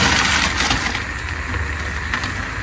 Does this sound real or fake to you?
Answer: real